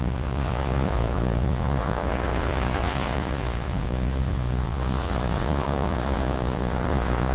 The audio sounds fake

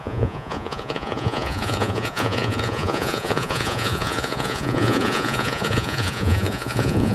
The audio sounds fake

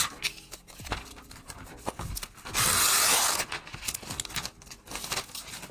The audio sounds real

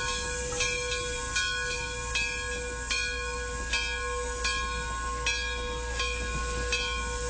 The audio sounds real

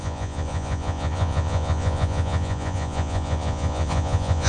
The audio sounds fake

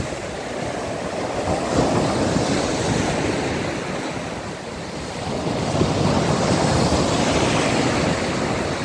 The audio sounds real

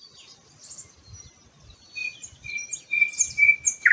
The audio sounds real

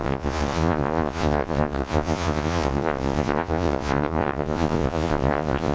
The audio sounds fake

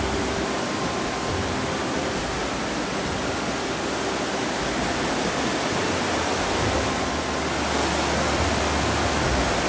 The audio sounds real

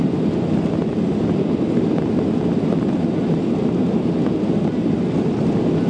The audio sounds real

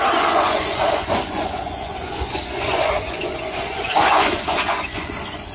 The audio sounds fake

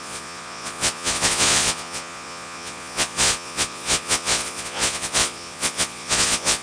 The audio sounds fake